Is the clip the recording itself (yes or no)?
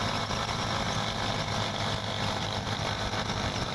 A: yes